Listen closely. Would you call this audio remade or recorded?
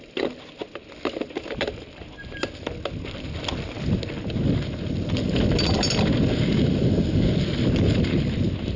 recorded